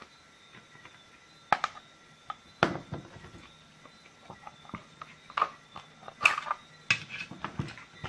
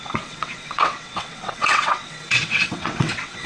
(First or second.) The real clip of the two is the first